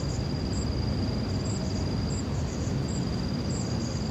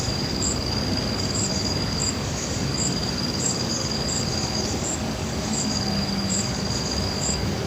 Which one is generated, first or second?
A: second